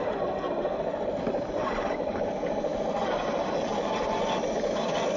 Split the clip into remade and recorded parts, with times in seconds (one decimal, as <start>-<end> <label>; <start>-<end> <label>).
0.0-5.2 recorded